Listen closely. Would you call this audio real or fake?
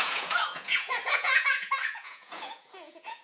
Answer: fake